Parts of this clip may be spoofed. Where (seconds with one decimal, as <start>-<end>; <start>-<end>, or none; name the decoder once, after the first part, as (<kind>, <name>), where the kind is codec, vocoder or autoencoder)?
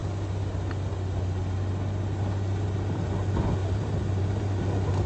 3.6-4.4 (vocoder, BigVGAN v2)